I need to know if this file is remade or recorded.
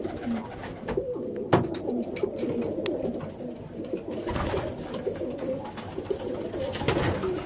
recorded